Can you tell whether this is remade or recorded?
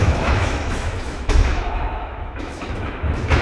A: remade